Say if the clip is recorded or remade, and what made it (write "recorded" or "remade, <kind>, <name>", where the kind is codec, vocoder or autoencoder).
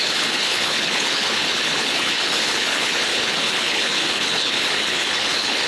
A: remade, codec, HILCodec